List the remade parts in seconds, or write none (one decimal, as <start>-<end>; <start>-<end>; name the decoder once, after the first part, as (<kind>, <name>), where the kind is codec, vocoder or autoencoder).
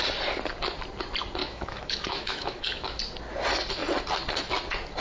1.4-3.0 (autoencoder, DAC-VAE)